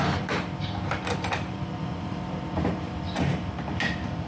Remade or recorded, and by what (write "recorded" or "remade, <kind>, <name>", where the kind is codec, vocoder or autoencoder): remade, vocoder, BigVGAN v2